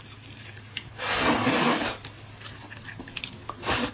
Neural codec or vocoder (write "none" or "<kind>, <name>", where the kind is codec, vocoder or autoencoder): none